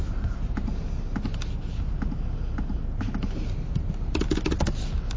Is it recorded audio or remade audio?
recorded